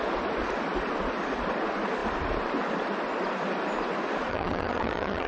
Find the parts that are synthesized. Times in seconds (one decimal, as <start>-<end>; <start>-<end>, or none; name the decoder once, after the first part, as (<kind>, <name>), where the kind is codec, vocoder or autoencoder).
4.3-5.3 (vocoder, HiFi-GAN)